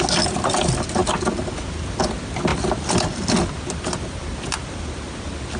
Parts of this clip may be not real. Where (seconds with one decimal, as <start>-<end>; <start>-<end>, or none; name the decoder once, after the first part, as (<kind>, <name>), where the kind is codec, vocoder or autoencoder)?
none